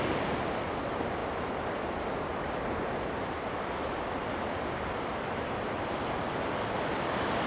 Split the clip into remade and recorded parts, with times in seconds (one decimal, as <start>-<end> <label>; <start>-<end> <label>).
0.0-7.5 recorded